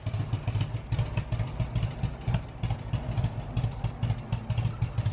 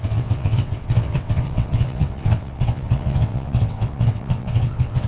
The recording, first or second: first